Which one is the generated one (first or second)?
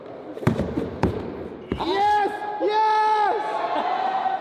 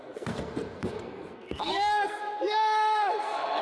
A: second